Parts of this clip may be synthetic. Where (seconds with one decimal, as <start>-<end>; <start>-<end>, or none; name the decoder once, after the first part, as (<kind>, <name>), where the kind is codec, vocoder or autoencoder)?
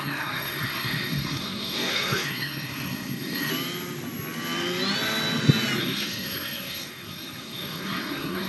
0.0-3.5 (codec, SNAC); 5.8-8.5